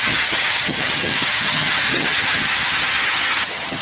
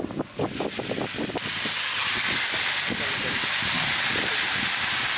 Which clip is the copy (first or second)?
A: first